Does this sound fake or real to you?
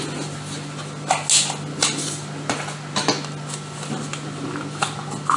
real